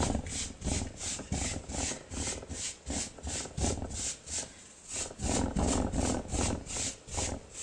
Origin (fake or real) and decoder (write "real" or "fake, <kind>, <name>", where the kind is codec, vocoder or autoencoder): real